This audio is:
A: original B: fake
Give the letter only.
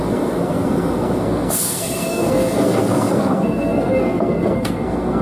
B